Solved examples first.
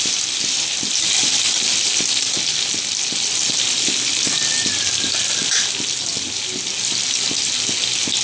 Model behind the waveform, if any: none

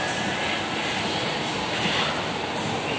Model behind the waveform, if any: none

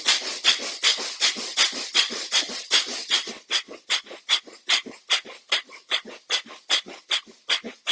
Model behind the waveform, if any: none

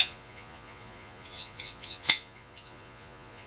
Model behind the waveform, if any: vocoder, Vocos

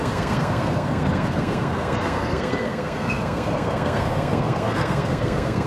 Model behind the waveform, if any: codec, SNAC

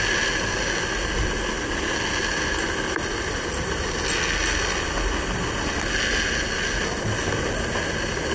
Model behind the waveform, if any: none